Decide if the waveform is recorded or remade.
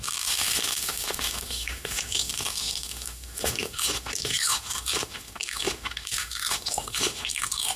remade